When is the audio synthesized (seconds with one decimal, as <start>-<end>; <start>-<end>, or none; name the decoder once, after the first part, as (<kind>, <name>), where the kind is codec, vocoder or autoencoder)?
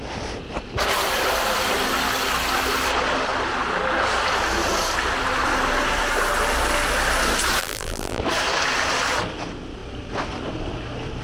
7.6-8.2 (vocoder, BigVGAN v2)